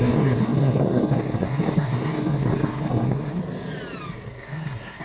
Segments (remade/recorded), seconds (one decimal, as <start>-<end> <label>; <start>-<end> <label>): 0.0-3.4 remade; 3.4-4.1 recorded; 4.1-5.0 remade